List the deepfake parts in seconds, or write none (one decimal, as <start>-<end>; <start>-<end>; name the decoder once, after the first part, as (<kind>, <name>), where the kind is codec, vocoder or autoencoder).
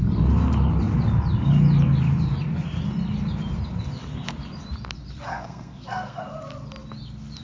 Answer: 5.3-6.2 (codec, SNAC)